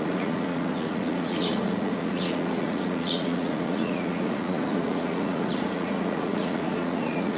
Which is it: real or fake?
fake